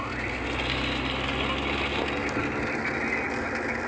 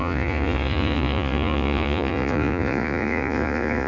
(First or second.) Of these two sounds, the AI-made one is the second